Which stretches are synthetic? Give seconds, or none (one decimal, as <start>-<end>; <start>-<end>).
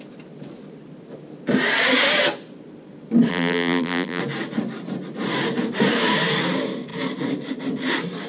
3.3-4.2